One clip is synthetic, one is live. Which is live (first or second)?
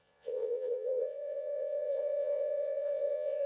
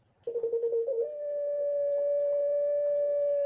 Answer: second